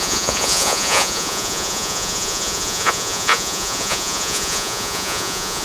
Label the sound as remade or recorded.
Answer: remade